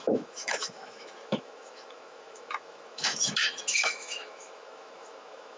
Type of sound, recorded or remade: remade